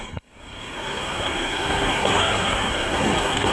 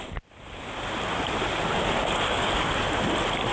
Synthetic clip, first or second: first